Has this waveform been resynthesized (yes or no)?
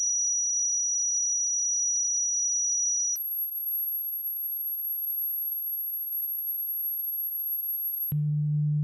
yes